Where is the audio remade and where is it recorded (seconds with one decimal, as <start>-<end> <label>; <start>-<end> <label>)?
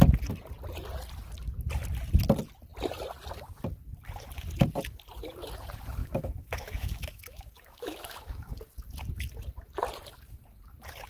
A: 0.0-6.0 recorded; 6.0-8.5 remade; 8.5-11.1 recorded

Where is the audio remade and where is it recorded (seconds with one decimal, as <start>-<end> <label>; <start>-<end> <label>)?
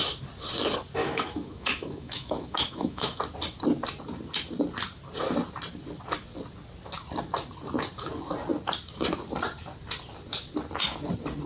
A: 0.0-1.0 recorded; 1.0-3.2 remade; 3.2-11.5 recorded